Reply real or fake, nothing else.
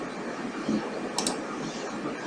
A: real